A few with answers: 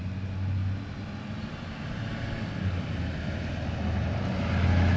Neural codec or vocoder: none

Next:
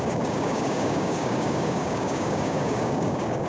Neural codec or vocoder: codec, DAC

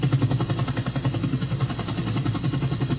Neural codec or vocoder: none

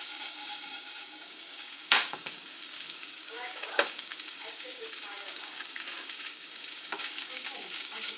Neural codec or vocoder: codec, DAC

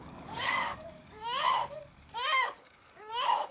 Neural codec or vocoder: codec, DAC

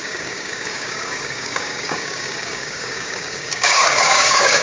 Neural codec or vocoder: codec, DAC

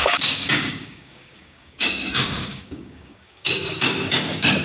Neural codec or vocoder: codec, DAC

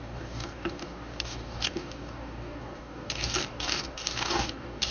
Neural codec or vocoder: codec, DAC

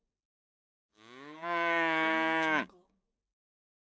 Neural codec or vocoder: codec, DAC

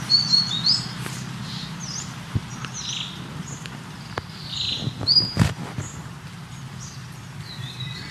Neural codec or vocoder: none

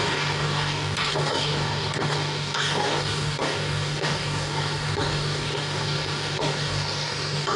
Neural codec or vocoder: codec, DAC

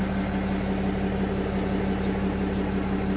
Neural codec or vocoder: none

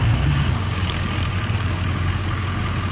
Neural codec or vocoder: codec, DAC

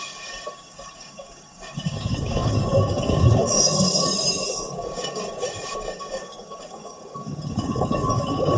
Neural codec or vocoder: codec, DAC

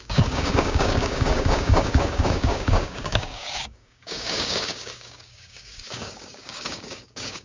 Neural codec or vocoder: codec, DAC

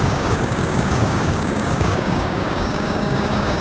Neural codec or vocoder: codec, DAC